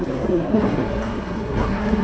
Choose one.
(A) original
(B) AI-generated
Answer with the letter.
B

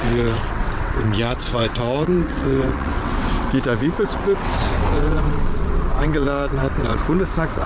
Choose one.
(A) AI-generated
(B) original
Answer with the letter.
A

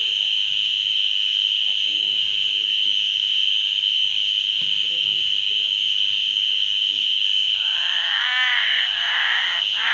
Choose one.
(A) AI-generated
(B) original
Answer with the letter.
A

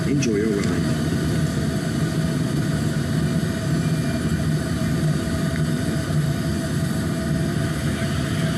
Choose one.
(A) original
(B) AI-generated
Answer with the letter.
A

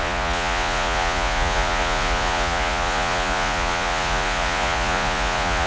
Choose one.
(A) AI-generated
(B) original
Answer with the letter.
A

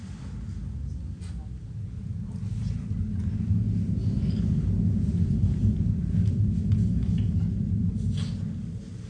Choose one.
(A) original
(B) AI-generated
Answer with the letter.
A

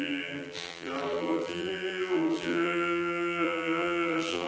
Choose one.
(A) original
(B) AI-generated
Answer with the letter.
B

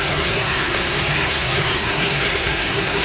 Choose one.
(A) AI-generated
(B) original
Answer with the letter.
A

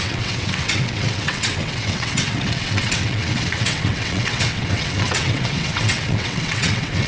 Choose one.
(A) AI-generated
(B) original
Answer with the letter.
A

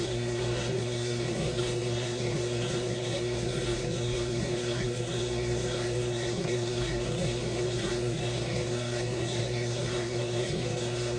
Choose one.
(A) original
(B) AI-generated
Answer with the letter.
B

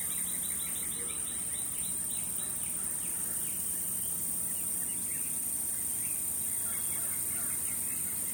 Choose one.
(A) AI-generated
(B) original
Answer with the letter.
B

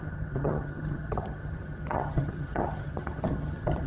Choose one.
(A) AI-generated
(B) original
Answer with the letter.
A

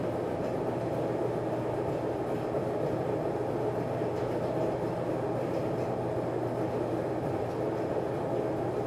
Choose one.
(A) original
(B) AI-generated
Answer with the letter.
A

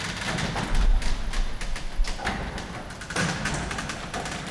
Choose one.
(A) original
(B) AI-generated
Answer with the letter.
A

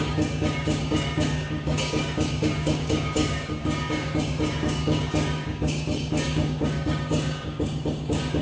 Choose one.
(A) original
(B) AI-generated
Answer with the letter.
B